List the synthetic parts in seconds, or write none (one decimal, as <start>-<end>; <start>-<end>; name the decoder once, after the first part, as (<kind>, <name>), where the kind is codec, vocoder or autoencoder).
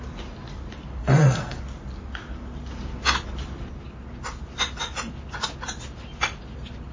1.0-1.6 (codec, SNAC)